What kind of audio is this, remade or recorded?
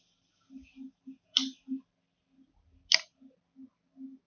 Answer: recorded